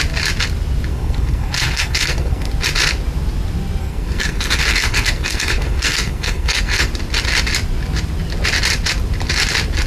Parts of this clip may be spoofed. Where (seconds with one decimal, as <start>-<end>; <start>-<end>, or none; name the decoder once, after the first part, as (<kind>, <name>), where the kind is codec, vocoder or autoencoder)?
0.9-2.5 (codec, SNAC); 3.8-6.9